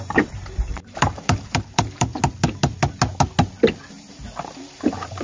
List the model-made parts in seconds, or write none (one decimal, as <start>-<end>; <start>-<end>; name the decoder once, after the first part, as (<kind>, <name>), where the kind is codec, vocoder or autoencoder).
0.0-2.1 (vocoder, BigVGAN v2); 3.9-5.2